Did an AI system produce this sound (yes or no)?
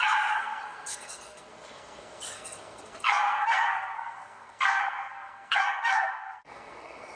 yes